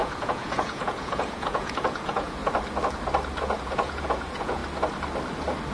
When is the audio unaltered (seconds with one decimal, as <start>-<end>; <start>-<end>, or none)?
2.4-3.6; 4.6-5.7